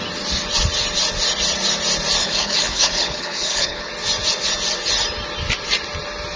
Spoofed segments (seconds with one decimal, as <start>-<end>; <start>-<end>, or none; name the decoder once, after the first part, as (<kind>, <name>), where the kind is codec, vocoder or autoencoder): 2.2-3.9 (codec, HILCodec)